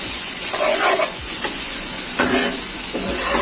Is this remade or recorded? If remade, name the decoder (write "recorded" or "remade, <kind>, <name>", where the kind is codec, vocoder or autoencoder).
remade, vocoder, Vocos